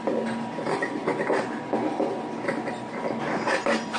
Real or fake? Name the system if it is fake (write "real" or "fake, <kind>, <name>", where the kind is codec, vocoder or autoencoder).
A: real